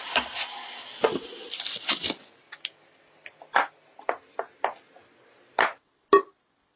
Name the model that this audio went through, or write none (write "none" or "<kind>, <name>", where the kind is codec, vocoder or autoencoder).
none